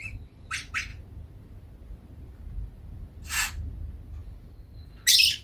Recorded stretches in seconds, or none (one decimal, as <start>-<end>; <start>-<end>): 0.0-5.4